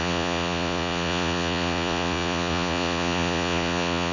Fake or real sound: fake